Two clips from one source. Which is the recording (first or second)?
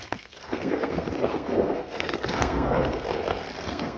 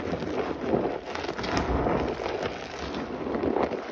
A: second